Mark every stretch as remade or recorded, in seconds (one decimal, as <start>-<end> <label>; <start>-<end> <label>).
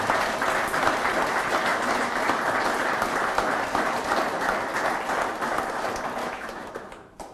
0.0-6.2 recorded; 6.2-6.7 remade; 6.7-7.3 recorded